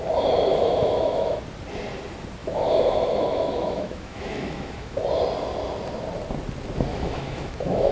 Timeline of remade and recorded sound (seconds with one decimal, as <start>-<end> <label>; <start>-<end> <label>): 0.0-0.5 recorded; 0.5-1.4 remade; 1.4-2.4 recorded; 2.4-5.0 remade; 5.0-6.9 recorded; 6.9-7.9 remade